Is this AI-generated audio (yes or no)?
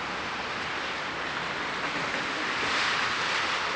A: no